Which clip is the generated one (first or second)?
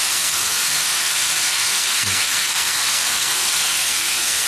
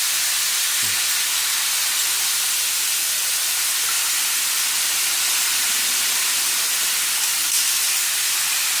first